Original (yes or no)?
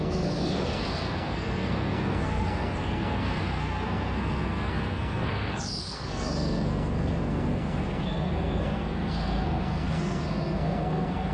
no